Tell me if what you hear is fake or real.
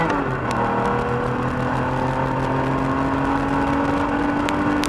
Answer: real